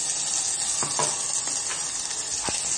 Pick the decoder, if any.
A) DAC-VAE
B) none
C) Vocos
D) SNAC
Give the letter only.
B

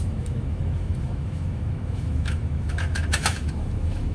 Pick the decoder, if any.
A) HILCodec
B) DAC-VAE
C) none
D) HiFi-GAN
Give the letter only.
B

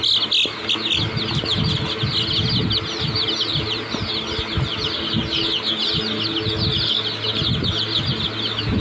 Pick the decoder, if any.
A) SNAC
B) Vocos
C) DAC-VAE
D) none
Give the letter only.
D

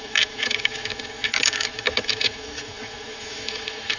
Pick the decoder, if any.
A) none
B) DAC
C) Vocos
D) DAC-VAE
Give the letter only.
D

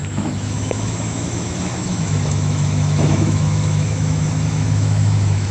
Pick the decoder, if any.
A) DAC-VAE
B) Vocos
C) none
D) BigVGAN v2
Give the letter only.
A